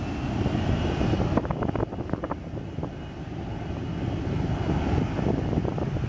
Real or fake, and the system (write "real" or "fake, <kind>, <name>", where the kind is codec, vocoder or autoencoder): real